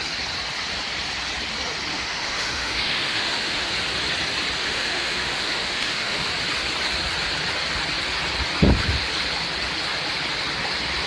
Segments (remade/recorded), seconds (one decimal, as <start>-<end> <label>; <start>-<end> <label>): 0.0-1.9 recorded; 1.9-3.7 remade; 3.7-4.6 recorded; 4.6-6.3 remade; 6.3-11.1 recorded